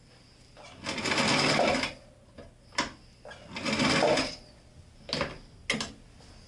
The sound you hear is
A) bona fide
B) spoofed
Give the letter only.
A